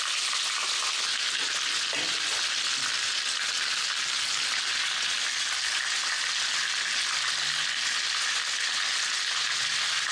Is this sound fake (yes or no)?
no